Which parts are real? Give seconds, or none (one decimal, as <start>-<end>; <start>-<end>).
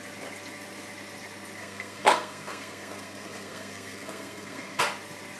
0.0-1.6; 4.8-5.4